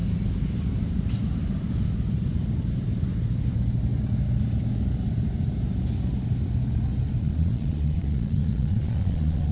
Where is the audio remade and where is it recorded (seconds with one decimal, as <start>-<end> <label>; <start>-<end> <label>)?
0.0-7.2 recorded; 7.2-9.5 remade